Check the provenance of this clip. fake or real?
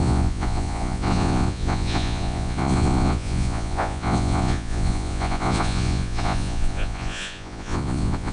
fake